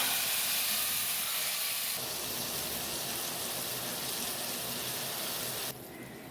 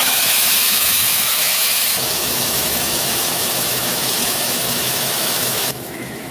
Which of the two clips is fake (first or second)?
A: second